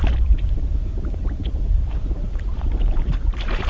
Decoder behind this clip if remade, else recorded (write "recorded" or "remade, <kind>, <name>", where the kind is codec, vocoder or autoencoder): recorded